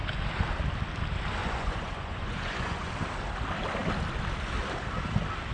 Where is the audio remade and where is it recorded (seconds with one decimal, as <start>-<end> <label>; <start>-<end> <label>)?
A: 0.0-1.4 recorded; 1.4-2.9 remade; 2.9-5.5 recorded